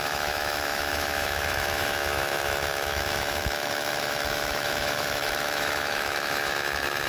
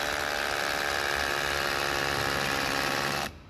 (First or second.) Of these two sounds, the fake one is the first